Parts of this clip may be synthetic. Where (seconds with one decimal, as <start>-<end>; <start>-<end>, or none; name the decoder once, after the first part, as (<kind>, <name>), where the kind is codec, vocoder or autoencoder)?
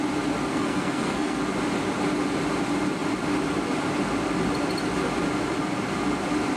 0.5-1.4 (codec, SNAC)